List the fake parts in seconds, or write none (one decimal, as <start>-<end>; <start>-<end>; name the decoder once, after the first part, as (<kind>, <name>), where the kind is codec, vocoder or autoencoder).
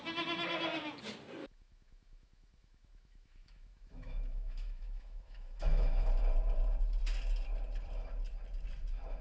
1.4-6.1 (autoencoder, DAC-VAE)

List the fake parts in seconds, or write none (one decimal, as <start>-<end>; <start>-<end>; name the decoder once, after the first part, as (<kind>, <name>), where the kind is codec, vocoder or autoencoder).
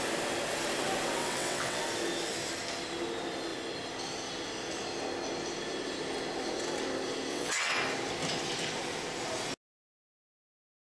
1.2-1.8 (vocoder, WaveNeXt); 7.3-7.8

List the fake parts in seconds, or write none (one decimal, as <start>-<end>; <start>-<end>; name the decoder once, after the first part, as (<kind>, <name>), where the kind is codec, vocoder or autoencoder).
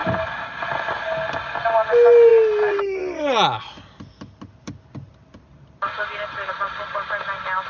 none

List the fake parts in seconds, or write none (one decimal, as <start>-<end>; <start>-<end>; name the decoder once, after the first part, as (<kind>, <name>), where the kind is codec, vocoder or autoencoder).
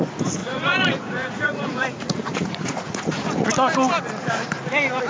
0.4-3.5 (vocoder, Vocos)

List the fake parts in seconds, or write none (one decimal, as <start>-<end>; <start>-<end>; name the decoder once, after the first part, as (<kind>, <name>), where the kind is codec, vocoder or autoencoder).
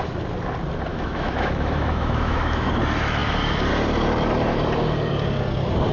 0.9-2.7 (autoencoder, DAC-VAE)